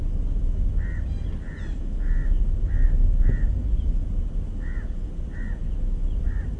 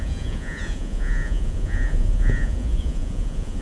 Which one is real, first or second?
first